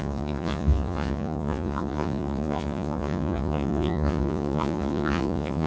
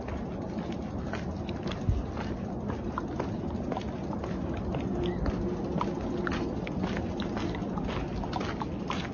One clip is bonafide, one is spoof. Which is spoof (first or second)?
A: first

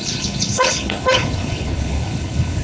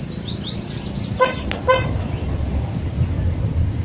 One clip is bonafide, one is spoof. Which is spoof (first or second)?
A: first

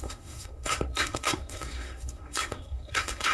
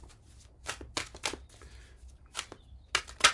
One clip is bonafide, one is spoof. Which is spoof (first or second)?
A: first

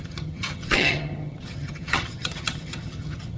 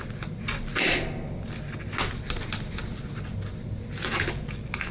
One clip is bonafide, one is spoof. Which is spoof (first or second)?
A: first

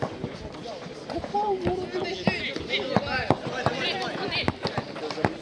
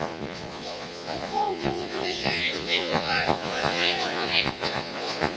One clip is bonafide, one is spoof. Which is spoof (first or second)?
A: second